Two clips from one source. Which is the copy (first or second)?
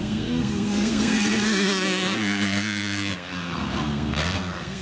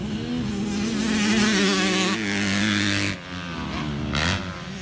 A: first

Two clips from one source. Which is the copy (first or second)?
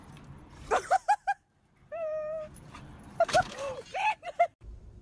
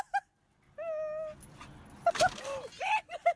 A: first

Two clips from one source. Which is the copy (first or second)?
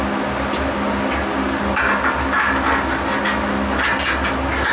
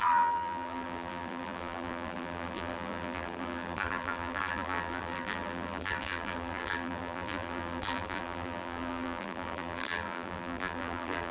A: second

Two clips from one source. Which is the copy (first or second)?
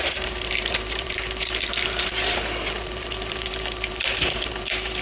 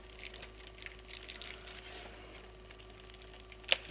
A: first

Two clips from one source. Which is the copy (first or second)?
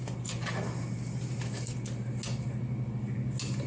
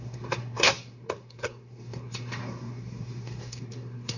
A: second